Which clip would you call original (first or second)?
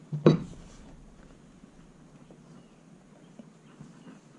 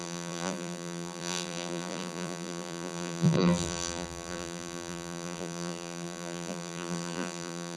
first